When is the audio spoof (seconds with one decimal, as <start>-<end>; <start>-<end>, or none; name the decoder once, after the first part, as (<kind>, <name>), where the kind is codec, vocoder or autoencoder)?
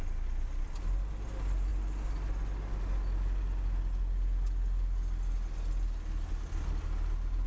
none